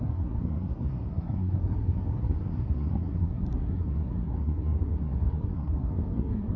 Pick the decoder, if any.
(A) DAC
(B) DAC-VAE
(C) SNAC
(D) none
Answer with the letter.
C